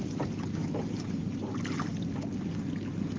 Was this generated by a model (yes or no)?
no